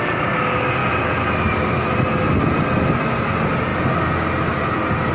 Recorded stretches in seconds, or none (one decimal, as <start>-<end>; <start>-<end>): 0.0-5.1